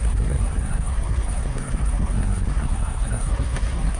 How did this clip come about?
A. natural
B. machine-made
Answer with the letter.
B